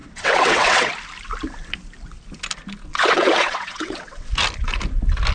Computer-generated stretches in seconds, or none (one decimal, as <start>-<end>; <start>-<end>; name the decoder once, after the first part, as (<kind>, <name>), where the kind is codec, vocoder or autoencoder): 0.0-0.9 (vocoder, WaveNeXt); 2.9-4.3